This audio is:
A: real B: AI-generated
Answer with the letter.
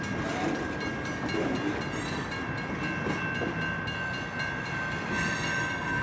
A